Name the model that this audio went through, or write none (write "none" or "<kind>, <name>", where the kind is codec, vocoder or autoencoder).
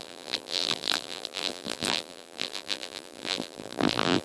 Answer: vocoder, BigVGAN v2